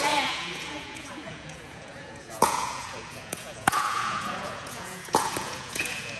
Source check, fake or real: fake